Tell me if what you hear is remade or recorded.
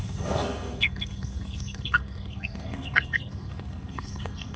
remade